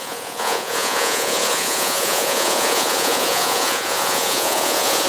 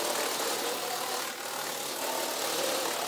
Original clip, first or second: second